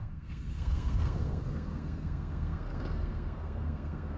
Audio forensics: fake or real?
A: fake